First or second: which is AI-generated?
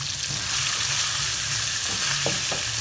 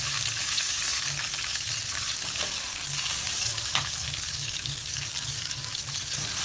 second